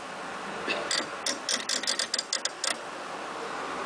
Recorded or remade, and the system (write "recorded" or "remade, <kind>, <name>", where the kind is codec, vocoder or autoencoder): recorded